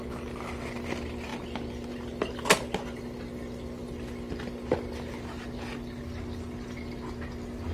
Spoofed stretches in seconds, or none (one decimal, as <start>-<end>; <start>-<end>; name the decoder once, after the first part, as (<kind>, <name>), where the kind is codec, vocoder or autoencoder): none

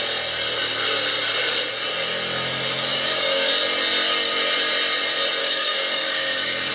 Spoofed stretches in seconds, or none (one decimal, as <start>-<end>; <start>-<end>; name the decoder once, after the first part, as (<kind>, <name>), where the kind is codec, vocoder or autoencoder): 2.9-3.5 (codec, DAC); 5.4-6.7

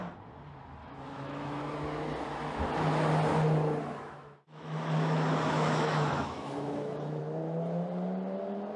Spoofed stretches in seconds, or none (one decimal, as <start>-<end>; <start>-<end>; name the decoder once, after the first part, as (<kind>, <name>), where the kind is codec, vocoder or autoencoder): 0.8-1.6 (autoencoder, DAC-VAE); 3.8-7.2

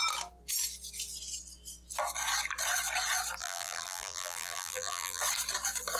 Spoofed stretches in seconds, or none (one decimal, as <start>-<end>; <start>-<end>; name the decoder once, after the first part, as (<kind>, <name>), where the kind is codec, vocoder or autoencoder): 3.4-5.2 (vocoder, BigVGAN v2)

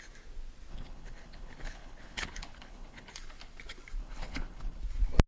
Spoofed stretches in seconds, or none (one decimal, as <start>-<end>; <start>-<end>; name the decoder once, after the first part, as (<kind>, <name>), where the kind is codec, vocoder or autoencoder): 0.7-3.1 (codec, HILCodec); 4.0-4.8

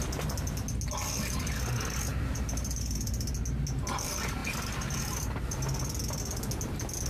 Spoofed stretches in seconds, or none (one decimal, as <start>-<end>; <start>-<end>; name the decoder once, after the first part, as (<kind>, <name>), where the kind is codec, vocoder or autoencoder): 2.1-3.3 (vocoder, BigVGAN v2)

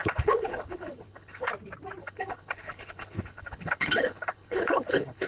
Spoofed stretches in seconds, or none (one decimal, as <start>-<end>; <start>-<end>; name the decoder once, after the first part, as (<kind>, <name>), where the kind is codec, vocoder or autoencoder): 0.0-1.5 (codec, HILCodec); 2.0-5.3

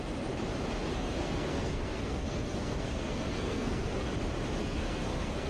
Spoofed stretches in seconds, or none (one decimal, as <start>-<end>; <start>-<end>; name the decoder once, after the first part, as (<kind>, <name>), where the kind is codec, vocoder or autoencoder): 0.9-4.1 (codec, SNAC); 4.6-5.5